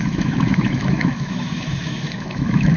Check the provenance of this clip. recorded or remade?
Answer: remade